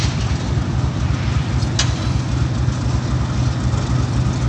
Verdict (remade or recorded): recorded